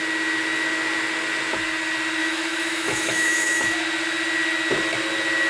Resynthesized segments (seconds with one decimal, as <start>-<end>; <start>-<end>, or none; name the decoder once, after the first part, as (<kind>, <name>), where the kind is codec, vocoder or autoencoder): 2.2-3.8 (autoencoder, DAC-VAE)